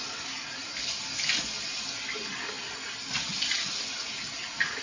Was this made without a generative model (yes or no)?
yes